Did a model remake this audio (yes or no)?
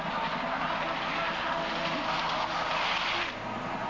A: no